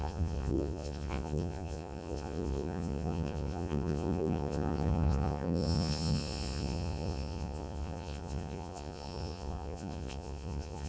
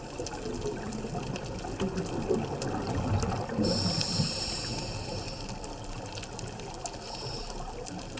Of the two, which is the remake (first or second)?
first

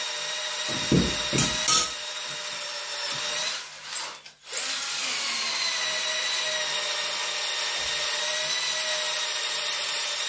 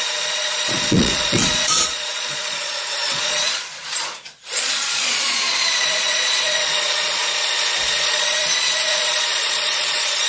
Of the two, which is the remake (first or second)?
second